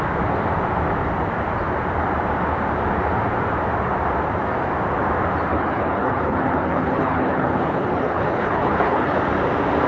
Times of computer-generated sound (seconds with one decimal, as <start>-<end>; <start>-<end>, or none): 5.5-9.2